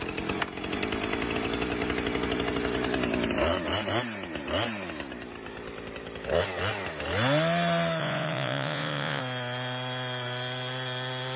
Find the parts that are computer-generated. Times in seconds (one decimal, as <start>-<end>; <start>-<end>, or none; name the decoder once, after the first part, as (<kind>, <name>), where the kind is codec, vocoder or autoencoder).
8.0-9.2 (vocoder, Vocos)